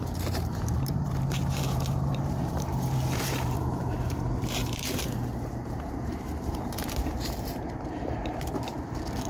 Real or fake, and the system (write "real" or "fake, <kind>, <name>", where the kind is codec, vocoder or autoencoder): fake, vocoder, BigVGAN v2